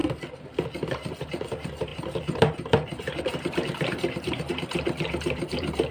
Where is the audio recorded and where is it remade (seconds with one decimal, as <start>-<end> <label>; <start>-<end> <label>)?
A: 0.0-0.9 recorded; 0.9-5.9 remade